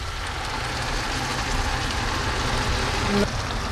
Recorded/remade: recorded